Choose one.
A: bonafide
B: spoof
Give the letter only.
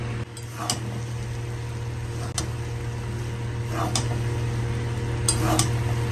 A